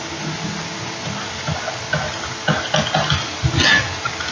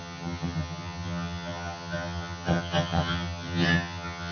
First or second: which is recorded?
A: first